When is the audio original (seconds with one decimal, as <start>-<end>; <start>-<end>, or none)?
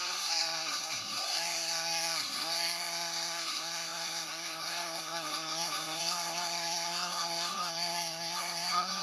none